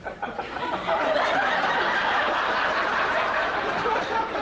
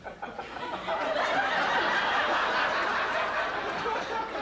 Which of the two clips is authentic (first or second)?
second